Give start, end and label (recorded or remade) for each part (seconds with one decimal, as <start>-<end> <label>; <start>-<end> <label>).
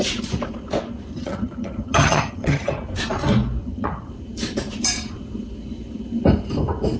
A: 0.0-1.1 recorded; 1.1-2.8 remade; 2.8-3.6 recorded; 3.6-4.1 remade; 4.1-7.0 recorded